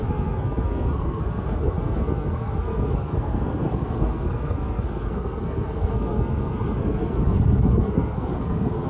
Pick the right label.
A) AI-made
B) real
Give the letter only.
A